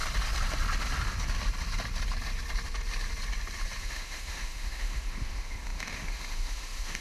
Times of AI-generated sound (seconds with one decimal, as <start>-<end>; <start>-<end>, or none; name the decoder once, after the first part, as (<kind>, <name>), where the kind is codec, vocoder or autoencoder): 3.8-7.0 (autoencoder, DAC-VAE)